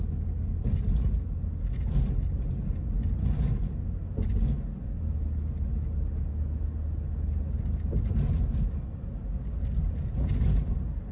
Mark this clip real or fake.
real